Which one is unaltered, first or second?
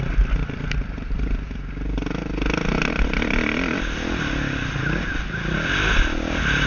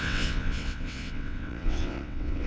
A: first